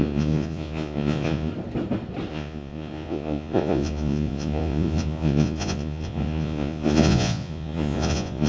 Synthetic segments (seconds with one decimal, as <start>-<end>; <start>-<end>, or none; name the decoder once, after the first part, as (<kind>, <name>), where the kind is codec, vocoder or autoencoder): 0.0-1.5 (vocoder, Vocos); 2.3-8.5

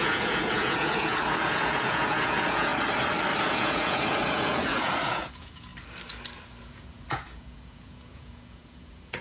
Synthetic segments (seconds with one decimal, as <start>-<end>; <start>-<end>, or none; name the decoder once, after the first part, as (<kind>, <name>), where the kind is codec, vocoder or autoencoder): 0.0-2.7 (vocoder, Vocos); 3.4-5.7; 6.6-9.2